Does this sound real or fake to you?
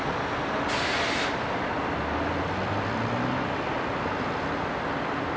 real